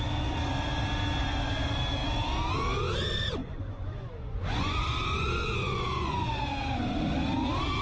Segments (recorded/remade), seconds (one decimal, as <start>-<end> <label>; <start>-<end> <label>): 0.0-3.4 recorded; 3.4-6.5 remade; 6.5-7.8 recorded